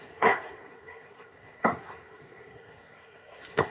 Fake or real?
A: fake